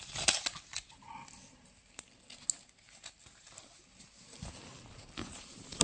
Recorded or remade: recorded